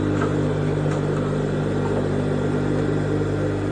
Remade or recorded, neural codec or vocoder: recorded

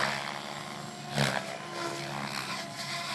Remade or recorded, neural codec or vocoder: recorded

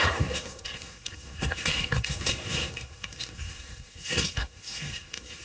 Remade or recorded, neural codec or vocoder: remade, codec, SNAC